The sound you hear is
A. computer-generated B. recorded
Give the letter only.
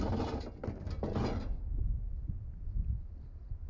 B